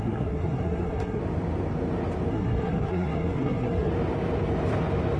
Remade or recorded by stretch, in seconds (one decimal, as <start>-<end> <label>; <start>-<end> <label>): 0.0-1.2 remade; 1.2-2.3 recorded; 2.3-3.9 remade; 3.9-5.2 recorded